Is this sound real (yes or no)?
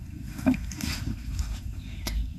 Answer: no